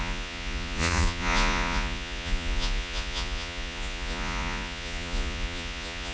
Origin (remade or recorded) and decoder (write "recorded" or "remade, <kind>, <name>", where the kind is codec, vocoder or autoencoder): remade, vocoder, Vocos